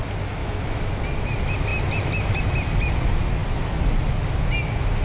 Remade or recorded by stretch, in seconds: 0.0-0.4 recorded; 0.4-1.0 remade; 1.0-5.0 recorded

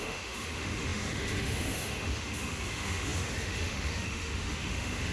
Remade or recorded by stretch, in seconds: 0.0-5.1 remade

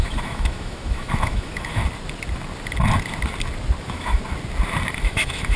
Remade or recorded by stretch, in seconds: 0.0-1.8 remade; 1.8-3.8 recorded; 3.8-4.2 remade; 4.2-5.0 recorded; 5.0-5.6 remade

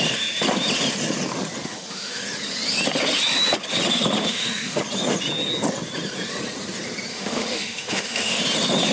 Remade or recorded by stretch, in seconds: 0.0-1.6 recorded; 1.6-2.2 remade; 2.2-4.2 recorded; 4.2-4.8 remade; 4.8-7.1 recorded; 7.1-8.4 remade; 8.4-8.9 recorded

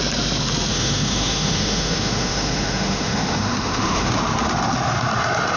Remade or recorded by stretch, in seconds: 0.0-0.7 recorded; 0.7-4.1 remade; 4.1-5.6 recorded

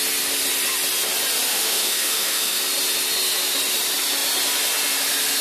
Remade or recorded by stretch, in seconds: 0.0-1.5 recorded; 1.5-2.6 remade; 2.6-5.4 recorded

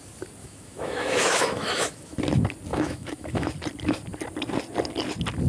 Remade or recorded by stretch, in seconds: 0.0-0.4 recorded; 0.4-2.2 remade; 2.2-2.7 recorded; 2.7-3.5 remade; 3.5-5.5 recorded

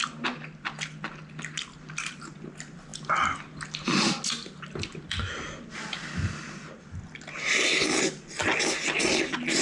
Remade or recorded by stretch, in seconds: 0.0-9.6 recorded